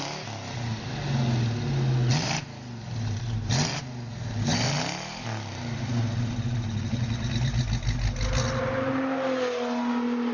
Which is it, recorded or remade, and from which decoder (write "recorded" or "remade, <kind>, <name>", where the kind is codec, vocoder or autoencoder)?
recorded